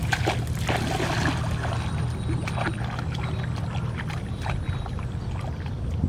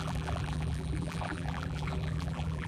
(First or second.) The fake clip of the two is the second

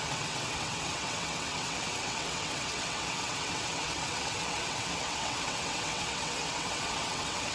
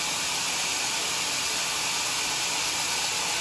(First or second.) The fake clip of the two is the first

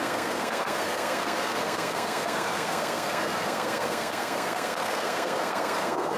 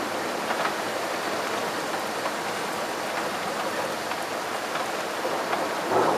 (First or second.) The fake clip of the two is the first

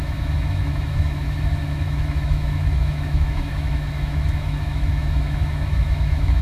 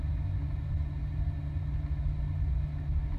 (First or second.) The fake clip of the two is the first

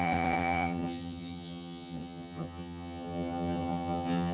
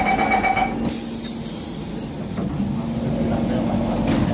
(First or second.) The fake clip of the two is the first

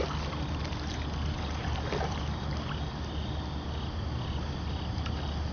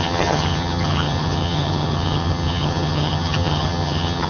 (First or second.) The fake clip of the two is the second